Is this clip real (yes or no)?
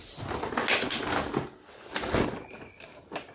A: yes